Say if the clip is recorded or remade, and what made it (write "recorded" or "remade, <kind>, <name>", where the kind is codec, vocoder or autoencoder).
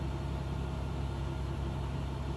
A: recorded